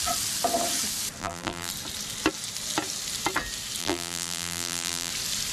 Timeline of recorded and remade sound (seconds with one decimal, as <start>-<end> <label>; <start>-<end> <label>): 0.0-1.2 recorded; 1.2-1.7 remade; 1.7-3.8 recorded; 3.8-5.1 remade; 5.1-5.5 recorded